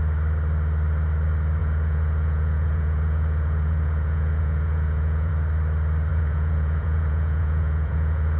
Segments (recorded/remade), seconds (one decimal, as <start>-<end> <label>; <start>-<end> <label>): 0.0-1.6 recorded; 1.6-5.3 remade; 5.3-6.1 recorded; 6.1-8.4 remade